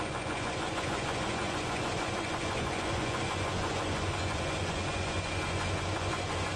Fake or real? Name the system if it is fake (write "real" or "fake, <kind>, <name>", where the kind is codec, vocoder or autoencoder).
fake, vocoder, Vocos